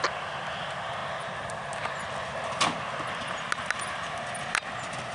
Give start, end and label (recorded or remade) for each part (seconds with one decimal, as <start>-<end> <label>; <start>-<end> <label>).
0.0-5.1 recorded